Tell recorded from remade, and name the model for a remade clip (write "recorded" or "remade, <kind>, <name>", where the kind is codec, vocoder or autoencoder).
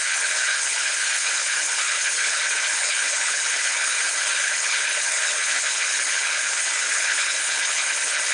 remade, codec, HILCodec